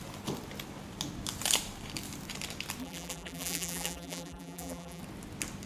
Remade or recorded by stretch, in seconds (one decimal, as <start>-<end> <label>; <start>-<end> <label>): 0.0-2.8 recorded; 2.8-5.0 remade; 5.0-5.7 recorded